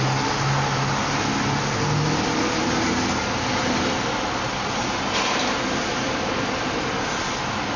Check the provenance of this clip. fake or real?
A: real